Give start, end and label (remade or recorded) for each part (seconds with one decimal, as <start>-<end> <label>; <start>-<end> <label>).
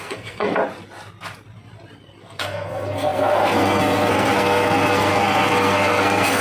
0.0-0.6 remade; 0.6-2.2 recorded; 2.2-6.4 remade